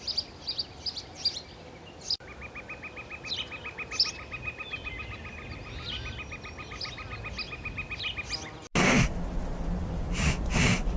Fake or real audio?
real